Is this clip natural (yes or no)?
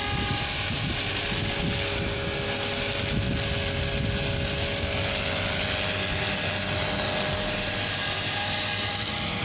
yes